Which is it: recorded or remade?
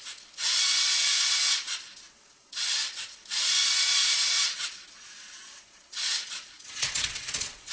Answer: remade